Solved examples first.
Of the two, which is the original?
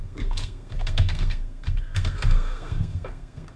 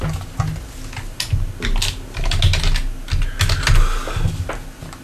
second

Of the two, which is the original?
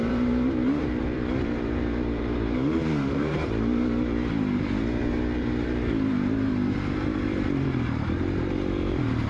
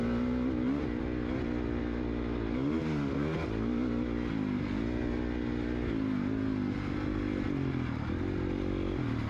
second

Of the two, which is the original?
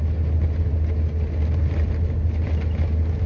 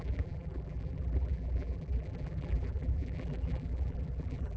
first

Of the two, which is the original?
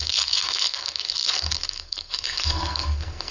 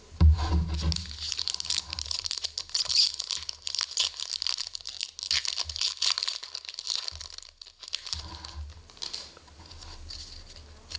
second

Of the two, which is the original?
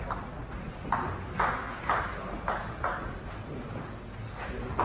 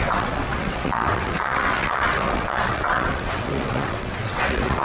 first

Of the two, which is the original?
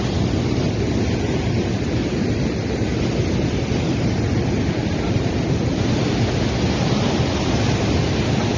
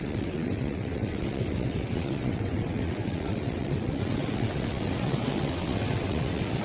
first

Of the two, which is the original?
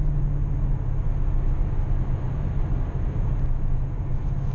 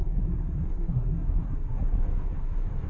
first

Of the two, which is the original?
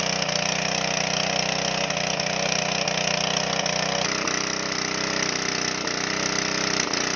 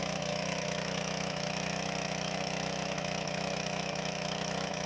first